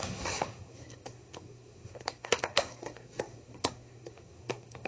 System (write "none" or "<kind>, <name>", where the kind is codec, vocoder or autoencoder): codec, SNAC